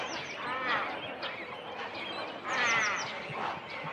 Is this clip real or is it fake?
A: real